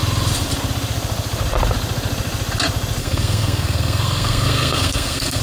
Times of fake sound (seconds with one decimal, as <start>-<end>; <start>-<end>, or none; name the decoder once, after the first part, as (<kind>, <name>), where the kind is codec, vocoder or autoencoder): 3.0-5.4 (codec, SNAC)